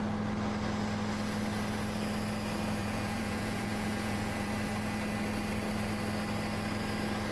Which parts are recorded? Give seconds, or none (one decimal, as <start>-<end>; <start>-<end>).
0.0-2.8; 4.5-7.3